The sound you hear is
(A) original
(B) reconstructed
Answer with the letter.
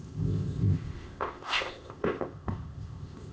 B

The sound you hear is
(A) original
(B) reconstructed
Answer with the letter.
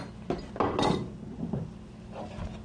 A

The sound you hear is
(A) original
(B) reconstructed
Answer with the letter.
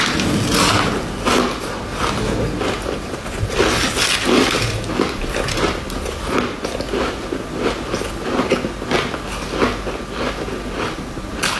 A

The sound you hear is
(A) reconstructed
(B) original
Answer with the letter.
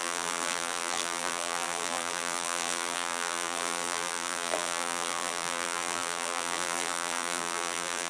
A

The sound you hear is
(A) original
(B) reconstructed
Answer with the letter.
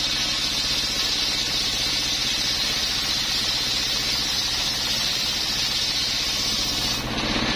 A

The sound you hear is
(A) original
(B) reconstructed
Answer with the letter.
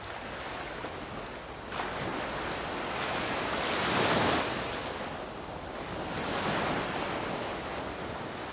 A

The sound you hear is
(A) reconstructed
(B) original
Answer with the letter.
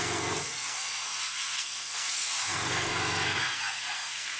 A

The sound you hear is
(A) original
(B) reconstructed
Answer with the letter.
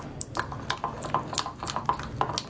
A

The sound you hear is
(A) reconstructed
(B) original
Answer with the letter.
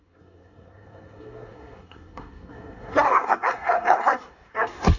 A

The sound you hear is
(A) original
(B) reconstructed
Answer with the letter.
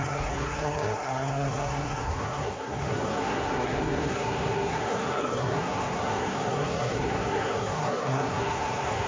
B